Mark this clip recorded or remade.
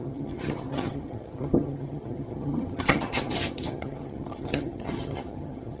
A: remade